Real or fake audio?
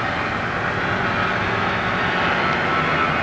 real